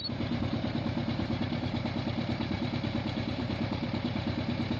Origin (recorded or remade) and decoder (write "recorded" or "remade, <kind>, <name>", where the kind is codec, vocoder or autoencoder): remade, vocoder, BigVGAN v2